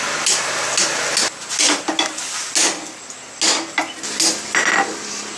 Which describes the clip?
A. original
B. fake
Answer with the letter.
A